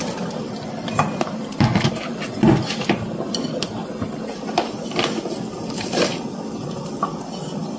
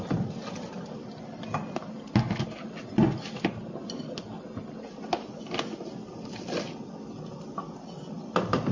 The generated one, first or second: first